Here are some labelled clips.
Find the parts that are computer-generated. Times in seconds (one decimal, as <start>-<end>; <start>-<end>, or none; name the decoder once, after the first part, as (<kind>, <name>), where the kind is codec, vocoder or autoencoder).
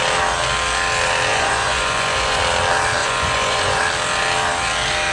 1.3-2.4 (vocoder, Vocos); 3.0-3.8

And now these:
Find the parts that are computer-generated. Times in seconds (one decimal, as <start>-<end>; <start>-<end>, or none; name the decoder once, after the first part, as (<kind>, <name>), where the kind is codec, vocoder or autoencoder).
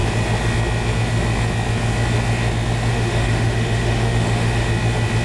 2.9-4.7 (autoencoder, DAC-VAE)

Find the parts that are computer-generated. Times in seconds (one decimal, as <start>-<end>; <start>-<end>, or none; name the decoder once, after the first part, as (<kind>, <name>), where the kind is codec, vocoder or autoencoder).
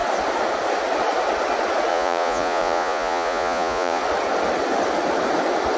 1.9-4.0 (vocoder, Vocos)